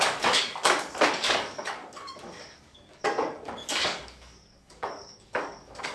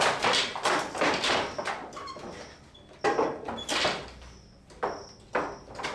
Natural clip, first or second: second